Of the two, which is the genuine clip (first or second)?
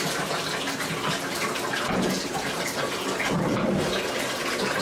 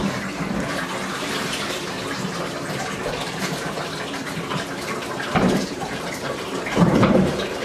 first